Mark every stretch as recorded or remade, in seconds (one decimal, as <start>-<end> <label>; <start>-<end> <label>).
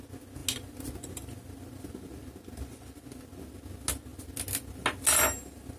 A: 0.0-5.8 recorded